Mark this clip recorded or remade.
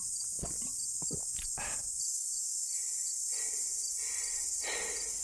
recorded